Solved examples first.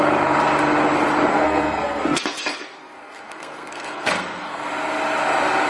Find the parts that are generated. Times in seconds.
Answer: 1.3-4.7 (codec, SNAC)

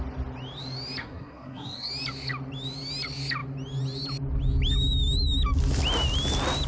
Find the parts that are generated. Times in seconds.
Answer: 1.0-1.9 (codec, SNAC)